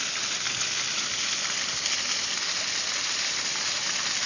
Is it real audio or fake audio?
real